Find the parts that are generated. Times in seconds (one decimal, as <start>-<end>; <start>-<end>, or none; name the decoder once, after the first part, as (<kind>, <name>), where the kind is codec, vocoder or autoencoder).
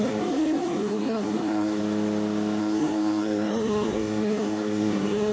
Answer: 0.0-1.8 (codec, SNAC); 2.6-5.3